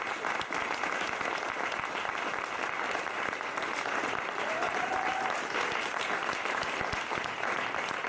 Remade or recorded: recorded